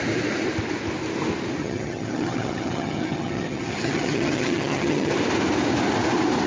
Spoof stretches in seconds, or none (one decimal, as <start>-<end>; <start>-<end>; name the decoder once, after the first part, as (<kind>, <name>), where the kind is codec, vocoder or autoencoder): 1.6-5.1 (vocoder, HiFi-GAN)